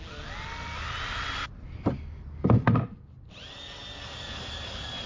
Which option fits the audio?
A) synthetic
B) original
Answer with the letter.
B